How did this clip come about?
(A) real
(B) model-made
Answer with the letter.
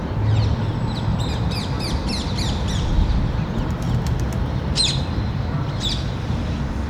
A